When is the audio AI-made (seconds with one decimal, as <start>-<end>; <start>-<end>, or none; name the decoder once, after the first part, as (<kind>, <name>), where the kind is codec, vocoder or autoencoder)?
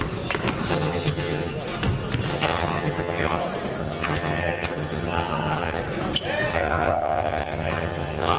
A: 0.7-1.5 (vocoder, HiFi-GAN); 2.3-3.4; 3.8-5.8; 6.5-8.4